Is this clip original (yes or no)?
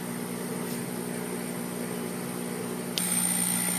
yes